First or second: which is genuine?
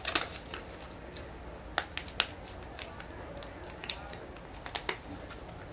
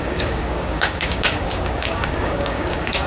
first